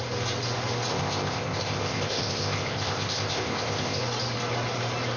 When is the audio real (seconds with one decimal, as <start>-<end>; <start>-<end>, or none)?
0.0-0.9; 4.0-5.2